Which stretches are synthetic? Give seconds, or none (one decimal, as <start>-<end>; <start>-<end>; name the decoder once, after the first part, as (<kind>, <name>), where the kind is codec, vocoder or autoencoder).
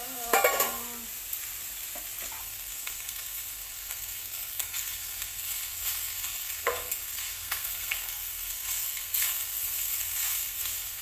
0.0-0.8 (codec, SNAC); 2.4-11.0